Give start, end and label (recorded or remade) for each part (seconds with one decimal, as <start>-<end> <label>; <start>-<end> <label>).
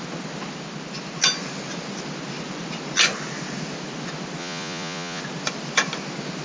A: 0.0-4.4 recorded; 4.4-5.2 remade; 5.2-6.4 recorded